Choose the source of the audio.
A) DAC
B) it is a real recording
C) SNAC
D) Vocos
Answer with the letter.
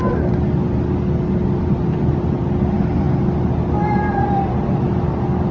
B